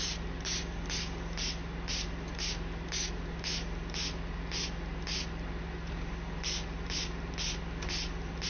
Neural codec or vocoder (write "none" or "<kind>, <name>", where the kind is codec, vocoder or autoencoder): none